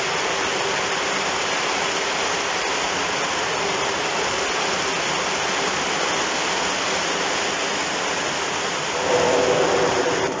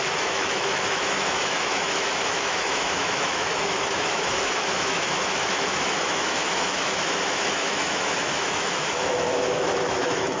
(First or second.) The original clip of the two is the first